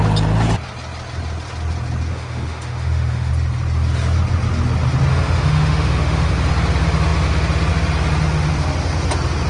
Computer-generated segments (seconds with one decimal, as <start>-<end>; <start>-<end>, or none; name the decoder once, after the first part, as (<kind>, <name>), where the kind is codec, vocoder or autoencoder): 2.1-3.3 (autoencoder, DAC-VAE); 5.1-6.3